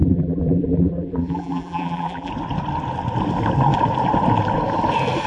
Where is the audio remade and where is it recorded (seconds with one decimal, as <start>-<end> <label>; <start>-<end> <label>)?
0.0-2.3 remade; 2.3-5.3 recorded